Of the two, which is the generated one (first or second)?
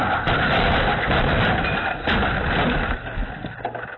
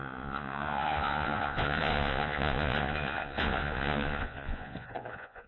second